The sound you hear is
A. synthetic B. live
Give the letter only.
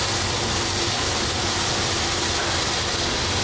B